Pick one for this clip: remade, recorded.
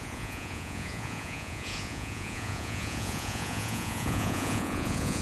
remade